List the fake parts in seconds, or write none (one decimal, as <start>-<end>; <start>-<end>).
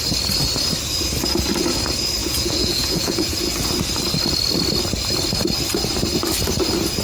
2.2-3.3